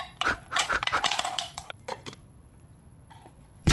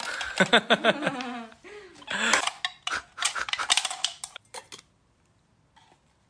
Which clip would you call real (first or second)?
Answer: second